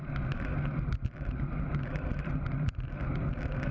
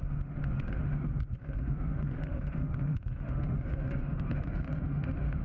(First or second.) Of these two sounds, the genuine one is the first